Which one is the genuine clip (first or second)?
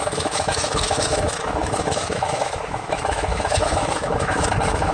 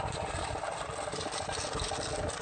second